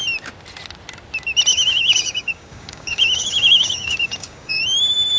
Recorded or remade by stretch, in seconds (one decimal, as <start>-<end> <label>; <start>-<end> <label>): 0.0-1.5 recorded; 1.5-4.6 remade; 4.6-5.2 recorded